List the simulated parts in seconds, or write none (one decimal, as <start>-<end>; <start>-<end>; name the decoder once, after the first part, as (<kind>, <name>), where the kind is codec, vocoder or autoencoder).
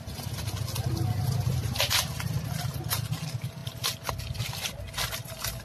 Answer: none